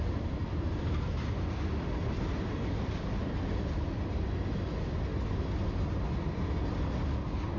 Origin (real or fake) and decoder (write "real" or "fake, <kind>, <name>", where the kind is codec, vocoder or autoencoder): real